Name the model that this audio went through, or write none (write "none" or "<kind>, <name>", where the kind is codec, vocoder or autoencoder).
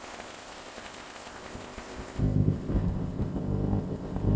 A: codec, ZipCodec